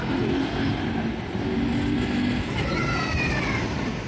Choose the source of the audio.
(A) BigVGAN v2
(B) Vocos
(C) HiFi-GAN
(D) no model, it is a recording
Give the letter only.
D